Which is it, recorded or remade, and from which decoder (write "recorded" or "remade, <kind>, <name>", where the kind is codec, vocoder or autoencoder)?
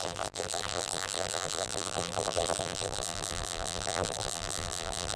remade, vocoder, BigVGAN v2